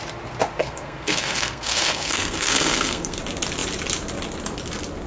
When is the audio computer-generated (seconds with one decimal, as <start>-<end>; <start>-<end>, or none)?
0.6-3.2